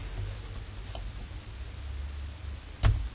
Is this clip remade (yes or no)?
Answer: no